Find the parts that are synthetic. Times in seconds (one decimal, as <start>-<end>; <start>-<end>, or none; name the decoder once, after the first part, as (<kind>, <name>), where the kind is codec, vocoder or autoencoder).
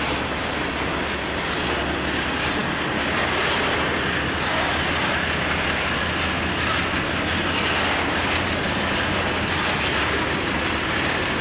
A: none